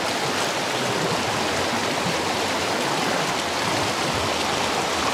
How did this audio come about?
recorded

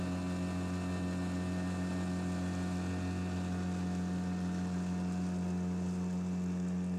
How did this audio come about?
recorded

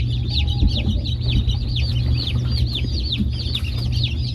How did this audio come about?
recorded